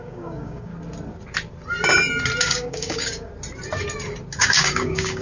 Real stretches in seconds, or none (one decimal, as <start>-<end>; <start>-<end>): 0.7-2.4; 3.3-4.4